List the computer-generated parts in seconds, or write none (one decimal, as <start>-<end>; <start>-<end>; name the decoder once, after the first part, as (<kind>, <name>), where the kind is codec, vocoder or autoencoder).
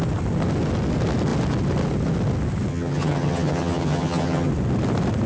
2.7-4.5 (vocoder, HiFi-GAN)